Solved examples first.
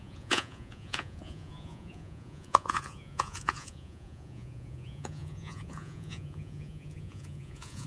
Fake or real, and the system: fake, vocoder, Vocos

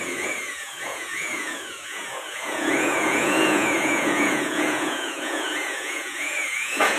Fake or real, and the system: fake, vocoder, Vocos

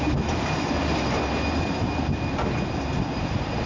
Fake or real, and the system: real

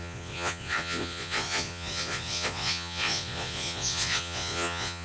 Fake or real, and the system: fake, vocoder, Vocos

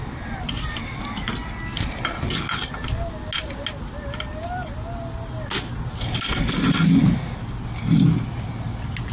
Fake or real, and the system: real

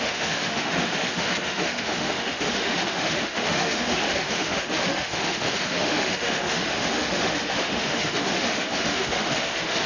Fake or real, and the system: fake, autoencoder, DAC-VAE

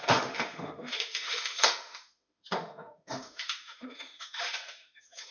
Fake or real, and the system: fake, autoencoder, DAC-VAE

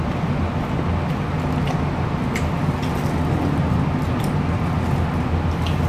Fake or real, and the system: real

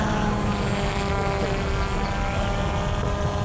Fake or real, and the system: real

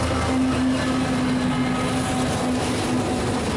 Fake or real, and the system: real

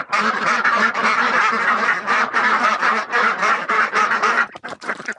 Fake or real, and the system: fake, vocoder, BigVGAN v2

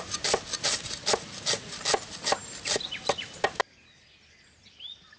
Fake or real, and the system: real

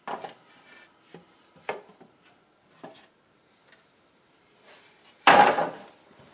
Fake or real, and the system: real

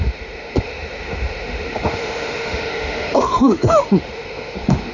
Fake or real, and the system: fake, autoencoder, DAC-VAE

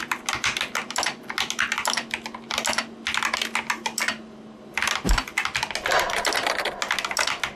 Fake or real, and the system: real